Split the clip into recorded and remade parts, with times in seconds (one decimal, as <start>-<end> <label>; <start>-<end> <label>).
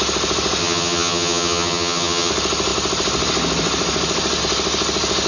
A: 0.0-0.6 recorded; 0.6-2.3 remade; 2.3-5.3 recorded